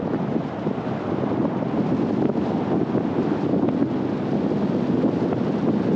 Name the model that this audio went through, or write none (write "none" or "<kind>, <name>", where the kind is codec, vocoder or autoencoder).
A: none